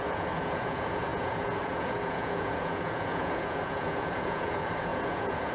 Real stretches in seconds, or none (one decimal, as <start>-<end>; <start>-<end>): none